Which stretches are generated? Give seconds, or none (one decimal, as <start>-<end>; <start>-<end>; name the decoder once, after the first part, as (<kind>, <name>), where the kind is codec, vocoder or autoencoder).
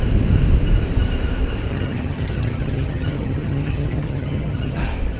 1.7-4.8 (vocoder, HiFi-GAN)